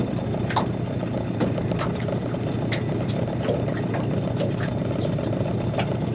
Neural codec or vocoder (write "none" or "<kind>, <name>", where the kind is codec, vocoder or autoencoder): none